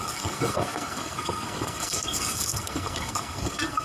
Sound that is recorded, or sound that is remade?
remade